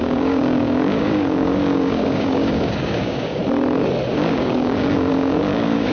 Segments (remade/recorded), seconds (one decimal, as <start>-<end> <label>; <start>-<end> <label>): 0.0-3.4 remade; 3.4-4.1 recorded; 4.1-5.9 remade

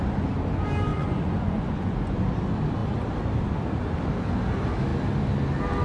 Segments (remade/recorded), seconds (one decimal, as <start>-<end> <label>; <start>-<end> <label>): 0.0-0.9 recorded; 0.9-2.2 remade; 2.2-5.8 recorded

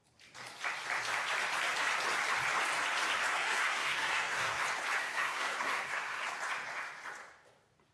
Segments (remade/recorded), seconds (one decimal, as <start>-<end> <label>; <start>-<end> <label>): 0.0-3.3 recorded; 3.3-4.6 remade; 4.6-5.0 recorded; 5.0-6.2 remade; 6.2-7.9 recorded

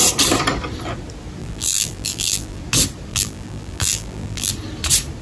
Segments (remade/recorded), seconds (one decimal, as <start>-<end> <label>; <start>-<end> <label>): 0.0-1.4 recorded; 1.4-2.6 remade; 2.6-3.1 recorded; 3.1-4.5 remade; 4.5-5.2 recorded

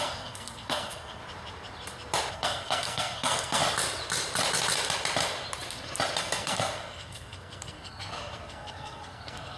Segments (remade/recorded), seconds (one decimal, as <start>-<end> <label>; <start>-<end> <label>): 0.0-1.2 remade; 1.2-2.3 recorded; 2.3-3.6 remade; 3.6-6.2 recorded; 6.2-9.6 remade

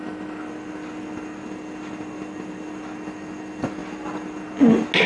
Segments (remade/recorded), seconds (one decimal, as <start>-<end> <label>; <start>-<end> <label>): 0.0-5.1 recorded

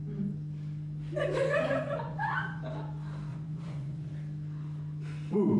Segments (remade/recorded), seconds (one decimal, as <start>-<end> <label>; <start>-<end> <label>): 0.0-1.4 recorded; 1.4-2.6 remade; 2.6-3.3 recorded; 3.3-4.1 remade; 4.1-5.6 recorded